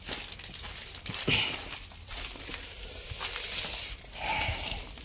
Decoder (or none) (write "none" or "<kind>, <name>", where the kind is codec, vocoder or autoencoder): none